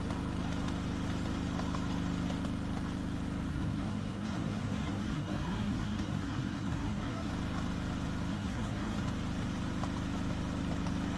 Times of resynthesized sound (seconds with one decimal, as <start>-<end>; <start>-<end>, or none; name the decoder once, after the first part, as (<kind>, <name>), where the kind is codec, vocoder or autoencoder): 3.5-7.3 (codec, SNAC); 8.3-9.0